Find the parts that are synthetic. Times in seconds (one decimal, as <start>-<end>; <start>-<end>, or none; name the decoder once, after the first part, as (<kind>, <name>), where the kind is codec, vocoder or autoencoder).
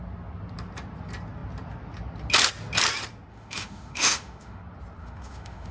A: 3.3-4.6 (autoencoder, DAC-VAE); 5.0-5.7